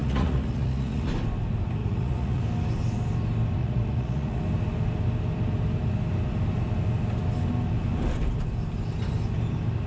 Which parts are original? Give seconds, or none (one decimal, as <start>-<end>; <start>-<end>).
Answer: 1.1-1.8; 2.4-3.6; 4.4-9.9